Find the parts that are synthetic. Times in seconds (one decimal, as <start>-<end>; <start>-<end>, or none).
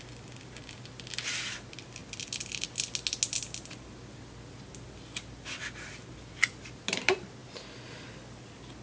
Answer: none